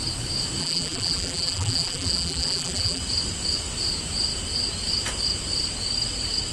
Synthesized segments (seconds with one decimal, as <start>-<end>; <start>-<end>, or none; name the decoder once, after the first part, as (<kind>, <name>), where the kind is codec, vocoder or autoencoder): 0.6-3.0 (vocoder, BigVGAN v2)